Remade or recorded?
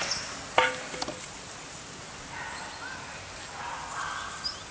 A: recorded